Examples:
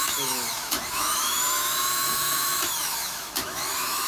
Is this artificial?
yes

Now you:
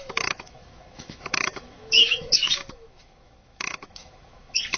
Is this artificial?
yes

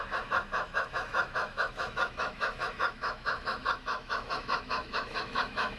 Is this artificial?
yes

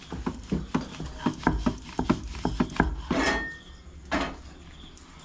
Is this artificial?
no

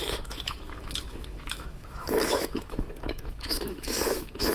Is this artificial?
yes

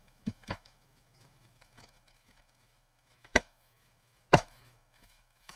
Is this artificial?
yes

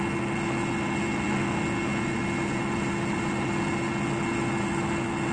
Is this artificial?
no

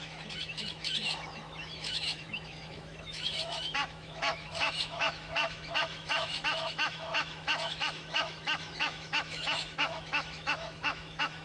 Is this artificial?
yes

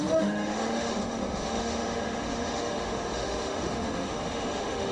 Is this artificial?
yes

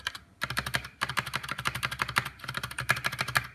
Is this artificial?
no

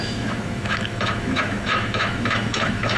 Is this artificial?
yes